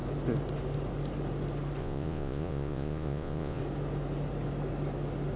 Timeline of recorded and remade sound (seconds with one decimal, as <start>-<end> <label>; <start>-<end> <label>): 0.0-1.8 recorded; 1.8-3.6 remade; 3.6-5.4 recorded